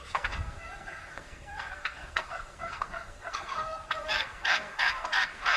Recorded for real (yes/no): no